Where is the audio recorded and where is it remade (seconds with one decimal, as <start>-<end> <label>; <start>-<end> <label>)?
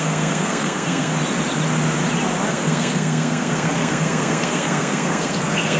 0.0-1.1 remade; 1.1-2.5 recorded; 2.5-5.8 remade